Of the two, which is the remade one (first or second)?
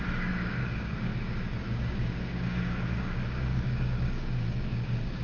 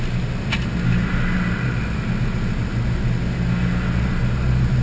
first